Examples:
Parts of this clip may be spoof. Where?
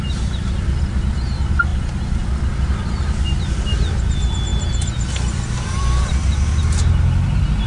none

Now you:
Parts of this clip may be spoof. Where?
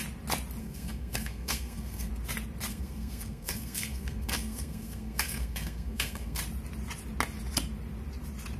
0.6-2.1; 2.7-6.4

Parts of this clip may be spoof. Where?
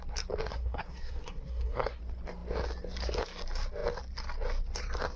0.5-2.0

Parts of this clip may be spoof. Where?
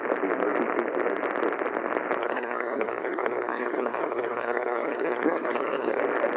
2.2-6.0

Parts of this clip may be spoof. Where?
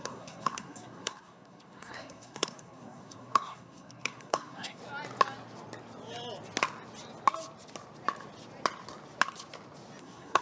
0.0-4.8; 10.0-10.4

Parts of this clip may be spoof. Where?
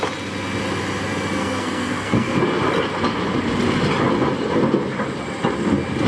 1.4-2.3